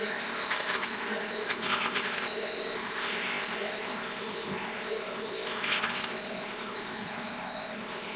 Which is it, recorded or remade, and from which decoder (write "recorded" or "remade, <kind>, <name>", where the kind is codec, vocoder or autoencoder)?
remade, codec, ZipCodec